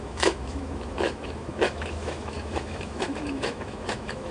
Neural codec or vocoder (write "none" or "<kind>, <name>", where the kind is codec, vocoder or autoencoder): autoencoder, DAC-VAE